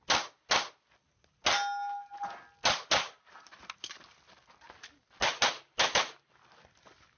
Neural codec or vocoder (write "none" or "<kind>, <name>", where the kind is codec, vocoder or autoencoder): none